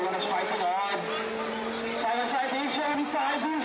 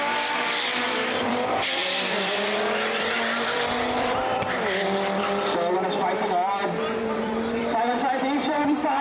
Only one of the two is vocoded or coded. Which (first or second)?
second